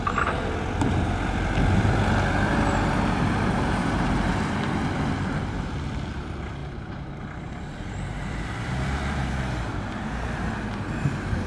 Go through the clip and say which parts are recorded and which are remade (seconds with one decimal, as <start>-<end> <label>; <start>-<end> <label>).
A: 0.0-3.8 recorded; 3.8-4.4 remade; 4.4-6.6 recorded; 6.6-10.5 remade; 10.5-11.5 recorded